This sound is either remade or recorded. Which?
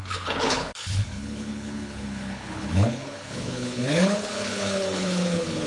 remade